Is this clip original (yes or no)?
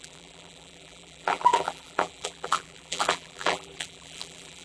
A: no